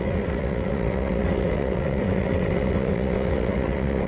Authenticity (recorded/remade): remade